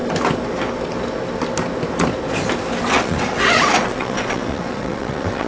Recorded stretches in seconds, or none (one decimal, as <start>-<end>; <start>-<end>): 0.0-2.9